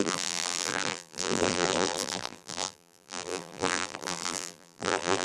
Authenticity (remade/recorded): remade